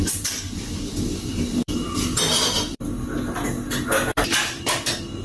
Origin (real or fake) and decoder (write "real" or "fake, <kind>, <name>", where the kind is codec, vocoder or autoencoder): fake, vocoder, BigVGAN v2